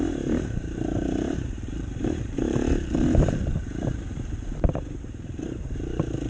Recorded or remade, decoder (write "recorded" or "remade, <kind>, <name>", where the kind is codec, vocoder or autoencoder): remade, vocoder, BigVGAN v2